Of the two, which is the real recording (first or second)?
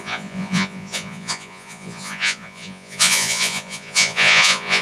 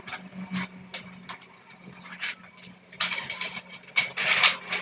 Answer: second